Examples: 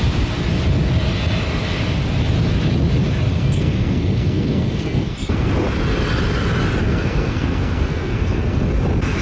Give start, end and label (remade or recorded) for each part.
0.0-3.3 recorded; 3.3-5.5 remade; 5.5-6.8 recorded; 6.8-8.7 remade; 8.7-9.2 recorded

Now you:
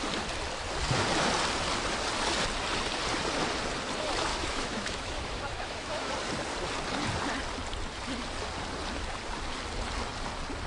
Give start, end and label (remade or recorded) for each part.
0.0-4.3 recorded; 4.3-6.1 remade; 6.1-10.7 recorded